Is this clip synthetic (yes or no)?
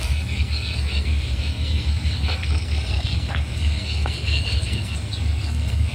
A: yes